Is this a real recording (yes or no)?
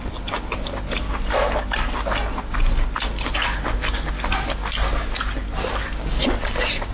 yes